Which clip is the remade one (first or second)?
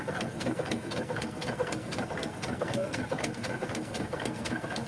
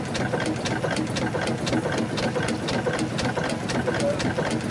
first